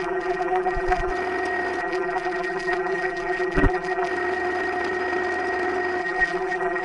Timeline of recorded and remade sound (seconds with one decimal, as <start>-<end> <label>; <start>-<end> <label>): 0.0-1.1 remade; 1.1-1.8 recorded; 1.8-4.1 remade; 4.1-6.0 recorded; 6.0-6.8 remade